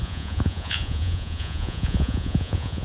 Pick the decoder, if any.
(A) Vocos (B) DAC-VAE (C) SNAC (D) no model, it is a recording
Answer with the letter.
A